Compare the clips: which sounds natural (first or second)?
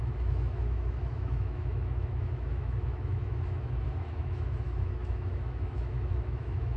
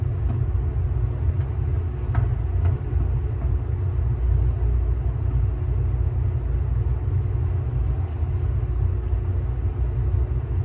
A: second